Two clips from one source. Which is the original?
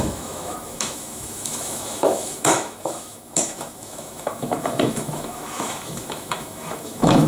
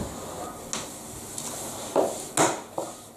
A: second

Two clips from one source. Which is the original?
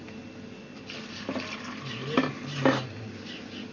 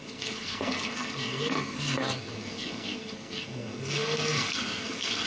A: first